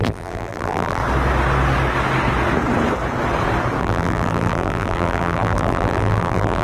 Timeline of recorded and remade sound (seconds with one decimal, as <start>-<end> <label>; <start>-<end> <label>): 0.0-1.0 remade; 1.0-3.8 recorded; 3.8-6.6 remade